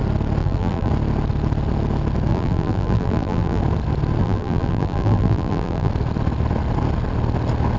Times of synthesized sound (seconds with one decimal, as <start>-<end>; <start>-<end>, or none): 0.4-0.9; 2.3-3.6; 4.2-5.9